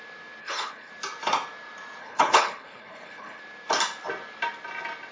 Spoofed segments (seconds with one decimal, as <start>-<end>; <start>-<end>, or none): 0.4-0.9; 2.0-3.4